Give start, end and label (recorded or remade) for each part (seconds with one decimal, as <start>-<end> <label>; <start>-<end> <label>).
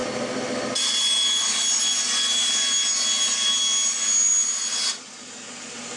0.0-6.0 recorded